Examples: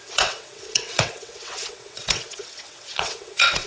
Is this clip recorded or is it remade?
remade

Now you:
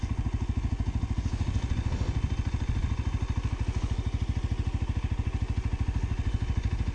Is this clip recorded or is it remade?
recorded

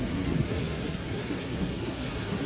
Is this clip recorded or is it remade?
remade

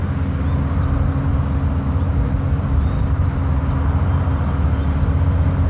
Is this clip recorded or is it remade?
recorded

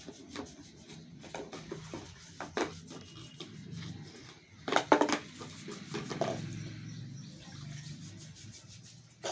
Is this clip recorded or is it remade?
recorded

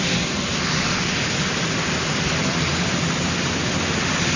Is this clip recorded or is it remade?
recorded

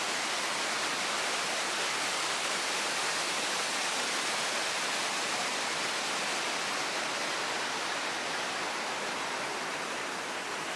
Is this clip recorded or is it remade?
recorded